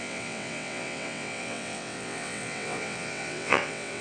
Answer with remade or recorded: remade